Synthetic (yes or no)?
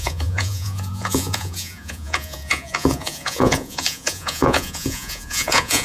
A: yes